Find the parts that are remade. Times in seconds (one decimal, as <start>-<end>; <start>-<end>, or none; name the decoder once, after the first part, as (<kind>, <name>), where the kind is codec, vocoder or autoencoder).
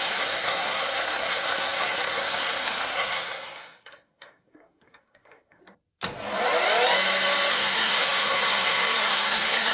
0.0-5.6 (codec, SNAC); 7.5-9.7